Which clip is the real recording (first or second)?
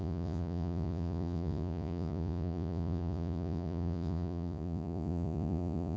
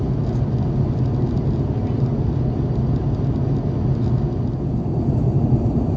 second